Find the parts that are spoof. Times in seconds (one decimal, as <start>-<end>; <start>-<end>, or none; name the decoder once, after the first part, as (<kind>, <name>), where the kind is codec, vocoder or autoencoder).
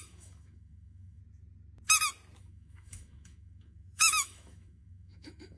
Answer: 0.0-1.2 (autoencoder, DAC-VAE); 2.4-5.6